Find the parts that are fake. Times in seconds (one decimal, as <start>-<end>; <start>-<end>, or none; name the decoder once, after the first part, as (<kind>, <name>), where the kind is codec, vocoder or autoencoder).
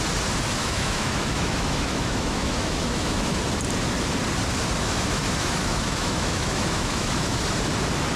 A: 0.6-3.4 (autoencoder, DAC-VAE); 4.8-7.4